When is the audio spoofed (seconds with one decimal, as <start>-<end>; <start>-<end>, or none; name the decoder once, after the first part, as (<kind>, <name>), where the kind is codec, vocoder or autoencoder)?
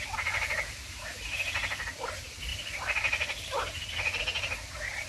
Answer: none